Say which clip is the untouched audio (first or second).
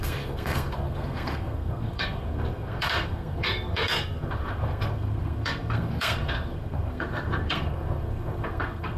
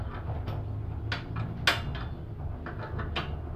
second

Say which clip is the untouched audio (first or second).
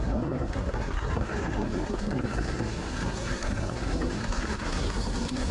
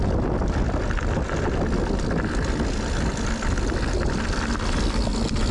second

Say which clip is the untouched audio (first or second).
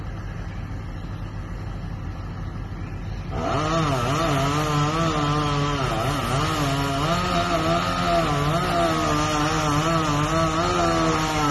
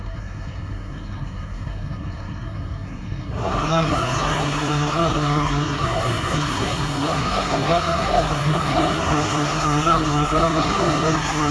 first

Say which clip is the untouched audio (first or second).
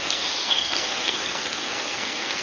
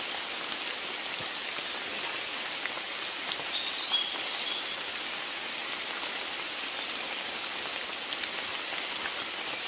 second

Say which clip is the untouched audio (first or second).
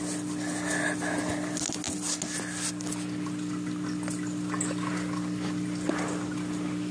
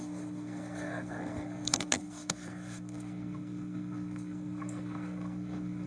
first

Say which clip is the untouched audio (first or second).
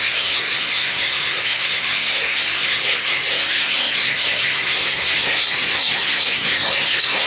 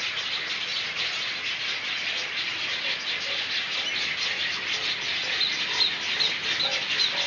second